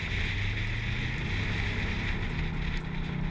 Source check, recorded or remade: recorded